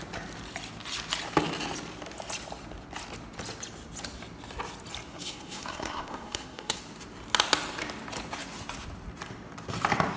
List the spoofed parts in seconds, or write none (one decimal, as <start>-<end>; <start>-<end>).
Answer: 5.1-6.8